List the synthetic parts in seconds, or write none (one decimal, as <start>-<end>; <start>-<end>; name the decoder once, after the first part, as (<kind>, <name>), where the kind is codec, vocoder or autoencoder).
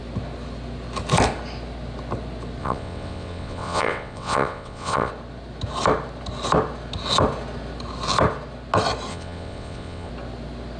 2.6-5.1 (vocoder, WaveNeXt); 9.1-10.1